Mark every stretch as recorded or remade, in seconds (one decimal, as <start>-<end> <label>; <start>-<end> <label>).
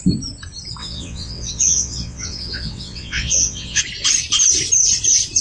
0.0-0.8 recorded; 0.8-3.8 remade; 3.8-5.4 recorded